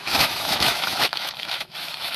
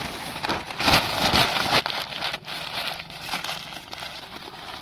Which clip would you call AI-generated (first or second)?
first